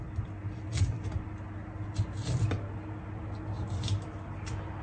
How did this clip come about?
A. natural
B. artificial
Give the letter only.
A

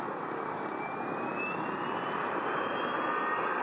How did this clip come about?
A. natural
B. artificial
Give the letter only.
A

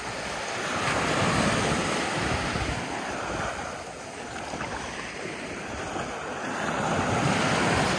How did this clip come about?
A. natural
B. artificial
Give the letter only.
A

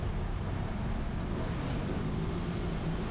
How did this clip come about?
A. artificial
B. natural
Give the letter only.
B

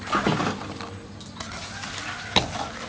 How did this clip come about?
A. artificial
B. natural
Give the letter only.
B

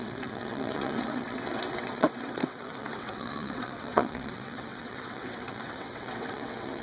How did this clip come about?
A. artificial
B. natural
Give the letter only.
A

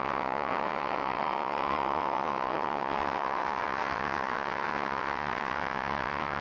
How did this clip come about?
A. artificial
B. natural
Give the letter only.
A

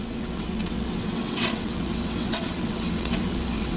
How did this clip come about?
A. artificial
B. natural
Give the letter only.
A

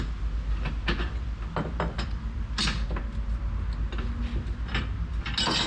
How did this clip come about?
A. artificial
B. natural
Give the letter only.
B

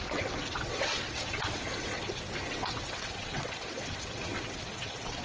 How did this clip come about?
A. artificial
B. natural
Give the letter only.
A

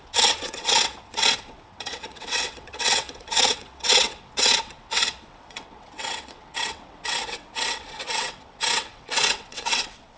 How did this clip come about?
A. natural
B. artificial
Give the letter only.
B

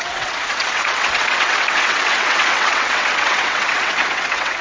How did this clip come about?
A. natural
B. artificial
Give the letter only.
B